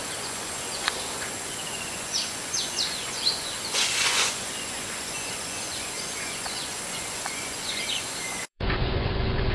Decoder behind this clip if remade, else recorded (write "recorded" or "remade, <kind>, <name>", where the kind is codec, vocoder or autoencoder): remade, vocoder, Vocos